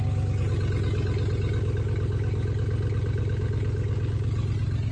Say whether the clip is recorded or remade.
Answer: recorded